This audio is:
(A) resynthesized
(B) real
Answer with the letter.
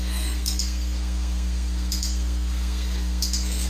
A